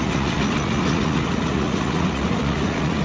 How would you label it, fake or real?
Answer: fake